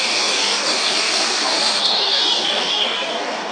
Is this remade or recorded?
remade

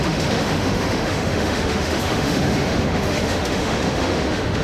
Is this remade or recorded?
remade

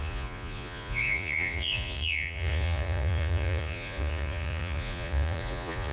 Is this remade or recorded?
remade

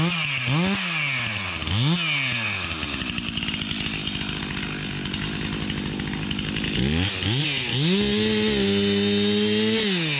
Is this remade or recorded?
recorded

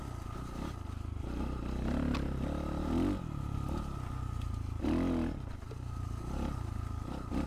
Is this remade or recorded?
recorded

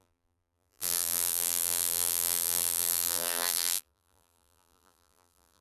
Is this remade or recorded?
remade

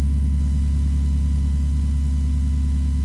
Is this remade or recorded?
recorded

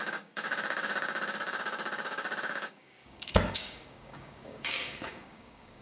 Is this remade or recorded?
remade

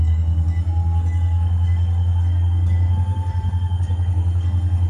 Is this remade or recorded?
remade